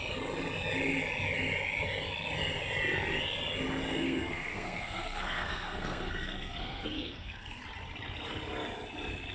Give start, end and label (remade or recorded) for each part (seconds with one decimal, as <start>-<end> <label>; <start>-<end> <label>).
0.0-3.9 recorded; 3.9-7.6 remade; 7.6-9.3 recorded